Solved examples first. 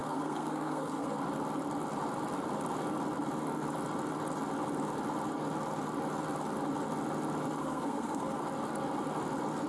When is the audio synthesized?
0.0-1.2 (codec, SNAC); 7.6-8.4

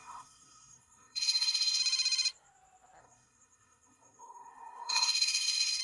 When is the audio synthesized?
0.0-1.8 (codec, SNAC); 3.0-5.8

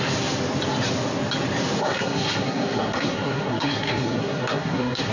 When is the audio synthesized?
1.8-5.1 (codec, SNAC)

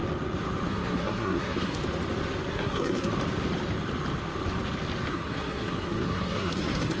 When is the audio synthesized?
0.7-1.8 (codec, SNAC); 2.5-3.1; 5.1-7.0